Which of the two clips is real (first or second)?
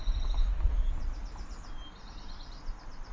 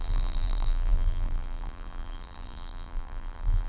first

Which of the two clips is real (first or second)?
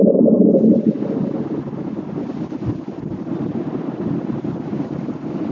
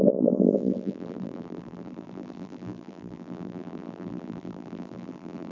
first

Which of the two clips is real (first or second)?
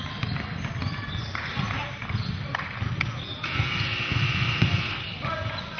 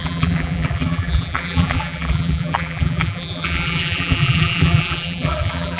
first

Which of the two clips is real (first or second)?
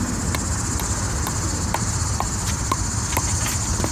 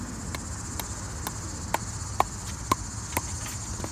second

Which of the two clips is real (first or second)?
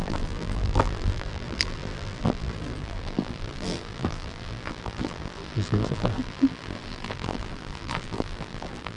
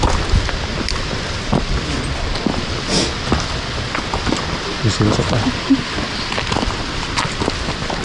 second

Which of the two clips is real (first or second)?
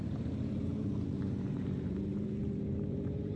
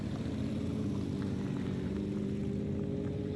second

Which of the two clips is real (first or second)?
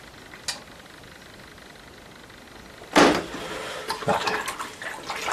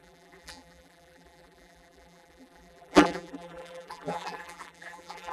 first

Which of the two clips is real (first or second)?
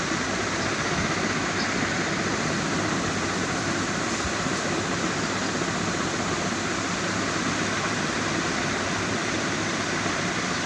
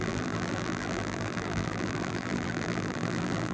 first